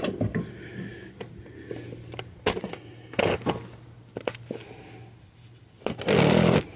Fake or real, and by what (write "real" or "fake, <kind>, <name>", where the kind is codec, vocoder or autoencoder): real